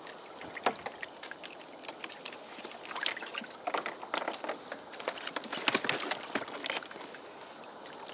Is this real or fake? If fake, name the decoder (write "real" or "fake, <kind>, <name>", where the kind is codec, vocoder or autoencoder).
real